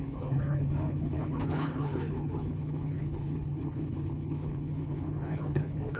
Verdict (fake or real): fake